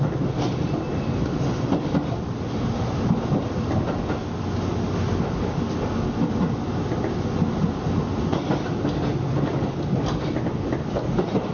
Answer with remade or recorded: recorded